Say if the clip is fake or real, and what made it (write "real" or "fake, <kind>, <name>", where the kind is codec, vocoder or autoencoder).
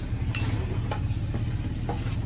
real